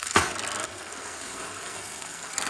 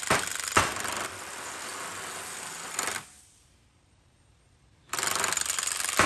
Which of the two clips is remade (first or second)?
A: first